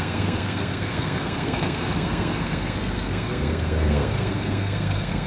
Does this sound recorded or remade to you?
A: remade